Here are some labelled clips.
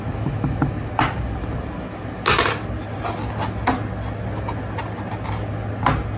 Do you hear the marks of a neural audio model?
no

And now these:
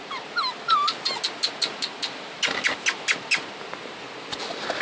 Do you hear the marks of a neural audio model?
no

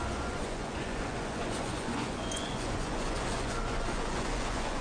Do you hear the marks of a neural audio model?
yes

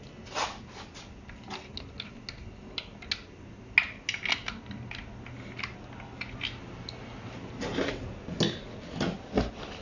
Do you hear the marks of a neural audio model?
no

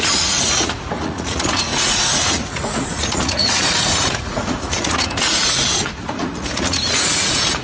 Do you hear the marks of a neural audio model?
yes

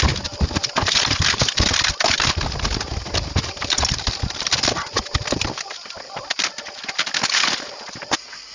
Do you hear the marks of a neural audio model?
no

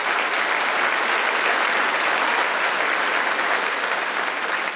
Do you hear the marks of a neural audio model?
no